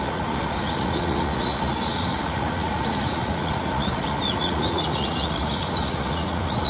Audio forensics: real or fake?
fake